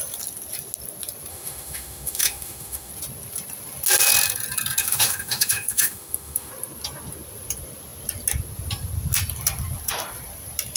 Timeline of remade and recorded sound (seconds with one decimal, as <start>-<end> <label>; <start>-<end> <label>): 0.0-1.3 recorded; 1.3-2.9 remade; 2.9-4.8 recorded; 4.8-6.5 remade; 6.5-10.8 recorded